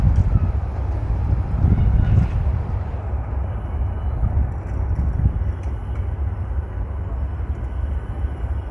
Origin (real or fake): real